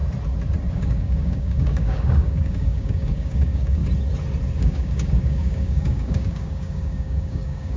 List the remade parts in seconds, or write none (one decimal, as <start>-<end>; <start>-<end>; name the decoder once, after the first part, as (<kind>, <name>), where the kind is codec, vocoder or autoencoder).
0.7-3.8 (codec, DAC); 4.6-7.8